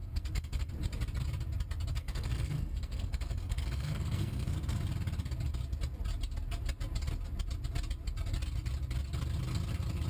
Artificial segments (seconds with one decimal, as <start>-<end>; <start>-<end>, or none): 0.0-0.7; 1.9-4.8